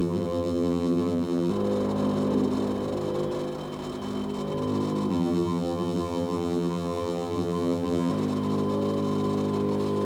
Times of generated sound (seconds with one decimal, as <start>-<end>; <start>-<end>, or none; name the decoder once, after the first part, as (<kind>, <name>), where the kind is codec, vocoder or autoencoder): 0.0-1.5 (vocoder, BigVGAN v2); 5.1-8.1